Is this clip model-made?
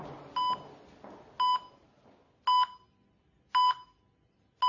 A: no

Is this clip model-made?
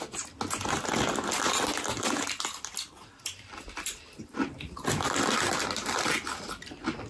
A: no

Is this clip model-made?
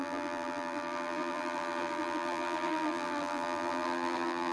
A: yes